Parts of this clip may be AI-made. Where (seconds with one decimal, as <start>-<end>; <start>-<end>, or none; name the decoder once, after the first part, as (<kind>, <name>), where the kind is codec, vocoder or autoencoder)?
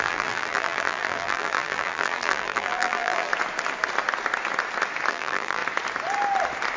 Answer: 0.0-3.3 (vocoder, BigVGAN v2); 5.1-5.6